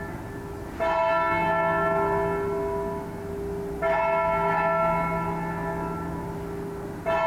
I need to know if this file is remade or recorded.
recorded